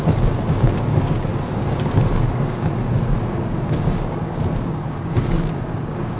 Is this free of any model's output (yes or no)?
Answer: no